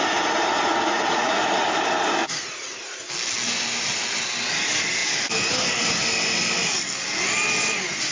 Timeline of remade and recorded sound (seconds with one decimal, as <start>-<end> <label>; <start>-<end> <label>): 0.0-0.7 recorded; 0.7-1.7 remade; 1.7-2.2 recorded; 2.2-3.1 remade; 3.1-8.1 recorded